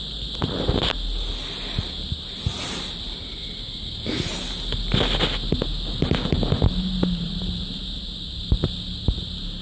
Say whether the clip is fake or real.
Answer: real